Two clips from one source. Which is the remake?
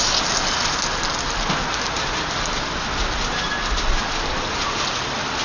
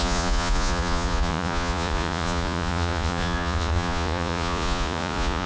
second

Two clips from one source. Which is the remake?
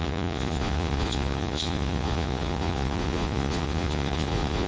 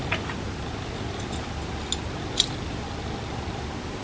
first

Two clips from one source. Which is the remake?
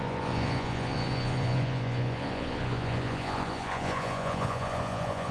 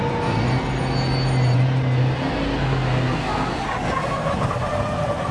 first